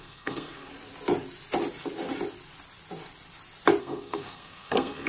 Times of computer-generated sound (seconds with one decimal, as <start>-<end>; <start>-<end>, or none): 0.0-0.7; 3.8-5.1